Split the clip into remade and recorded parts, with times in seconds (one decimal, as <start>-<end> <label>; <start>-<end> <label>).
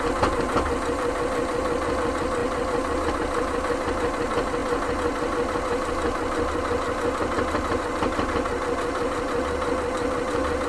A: 0.0-10.7 recorded